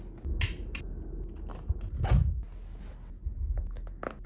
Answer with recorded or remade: recorded